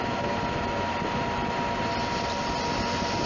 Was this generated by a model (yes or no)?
no